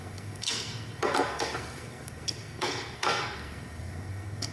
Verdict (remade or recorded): remade